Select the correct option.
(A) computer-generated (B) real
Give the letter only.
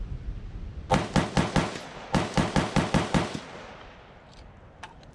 B